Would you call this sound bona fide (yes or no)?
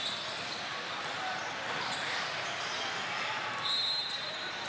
yes